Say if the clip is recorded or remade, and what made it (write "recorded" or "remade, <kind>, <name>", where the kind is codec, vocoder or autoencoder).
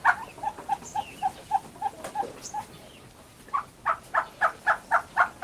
recorded